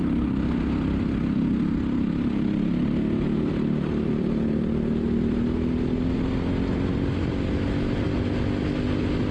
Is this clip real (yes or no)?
yes